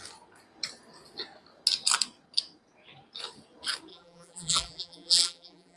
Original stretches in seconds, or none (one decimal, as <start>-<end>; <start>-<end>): 0.0-3.9